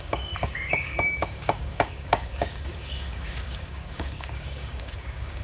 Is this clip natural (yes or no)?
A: no